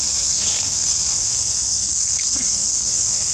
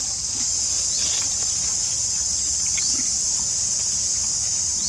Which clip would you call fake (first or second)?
first